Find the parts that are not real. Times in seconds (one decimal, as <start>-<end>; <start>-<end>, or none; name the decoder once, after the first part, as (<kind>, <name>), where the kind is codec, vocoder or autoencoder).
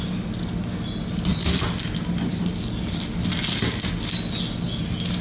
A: none